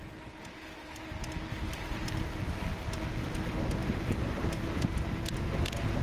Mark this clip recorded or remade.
recorded